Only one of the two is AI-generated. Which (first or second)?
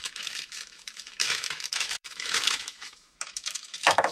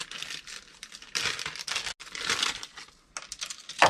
first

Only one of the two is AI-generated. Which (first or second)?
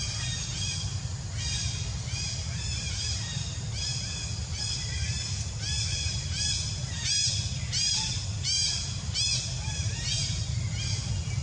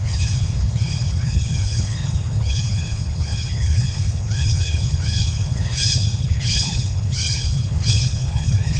second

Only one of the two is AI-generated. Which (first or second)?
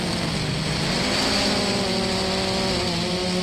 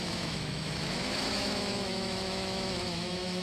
second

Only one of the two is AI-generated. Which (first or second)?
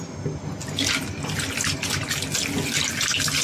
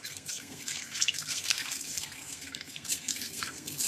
second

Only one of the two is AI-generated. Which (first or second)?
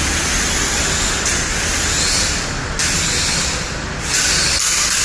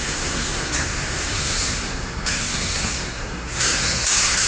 second